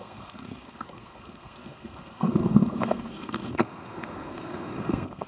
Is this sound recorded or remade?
remade